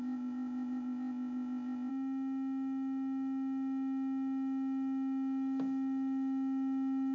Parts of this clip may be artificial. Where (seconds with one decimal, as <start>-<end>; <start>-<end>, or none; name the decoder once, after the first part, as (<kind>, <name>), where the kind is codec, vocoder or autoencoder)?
0.0-1.9 (codec, ZipCodec)